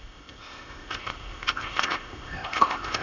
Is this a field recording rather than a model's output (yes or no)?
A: no